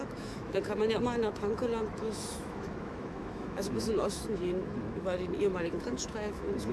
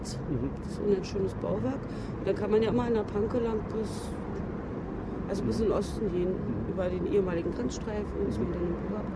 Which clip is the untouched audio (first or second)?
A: second